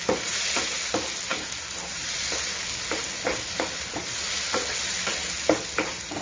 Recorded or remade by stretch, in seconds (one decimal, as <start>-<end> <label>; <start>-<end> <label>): 0.0-6.2 recorded